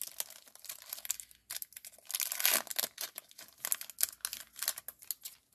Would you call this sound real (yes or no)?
yes